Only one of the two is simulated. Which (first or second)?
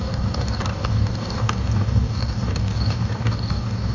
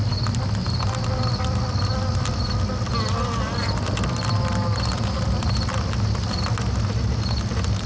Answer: first